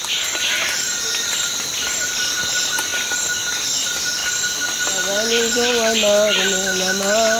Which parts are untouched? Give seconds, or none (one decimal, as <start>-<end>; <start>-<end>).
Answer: 4.2-7.4